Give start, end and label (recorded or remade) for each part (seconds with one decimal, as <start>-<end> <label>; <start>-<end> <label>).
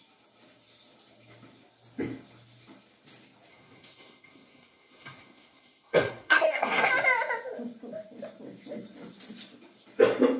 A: 0.0-3.5 recorded; 3.5-6.9 remade; 6.9-10.4 recorded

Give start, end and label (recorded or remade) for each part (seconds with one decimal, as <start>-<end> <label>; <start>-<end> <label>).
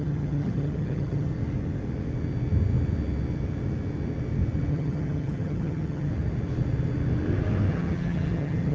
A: 0.0-1.3 remade; 1.3-4.7 recorded; 4.7-6.1 remade; 6.1-7.7 recorded; 7.7-8.7 remade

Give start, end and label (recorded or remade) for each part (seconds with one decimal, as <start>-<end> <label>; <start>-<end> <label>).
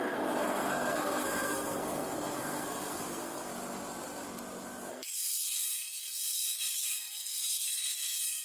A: 0.0-3.5 remade; 3.5-4.9 recorded; 4.9-8.4 remade